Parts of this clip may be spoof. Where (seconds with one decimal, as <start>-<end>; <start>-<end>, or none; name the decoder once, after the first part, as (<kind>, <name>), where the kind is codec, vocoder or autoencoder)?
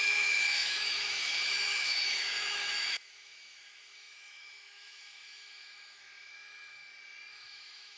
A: 0.0-6.8 (autoencoder, DAC-VAE); 7.3-8.0